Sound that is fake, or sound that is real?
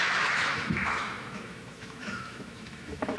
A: fake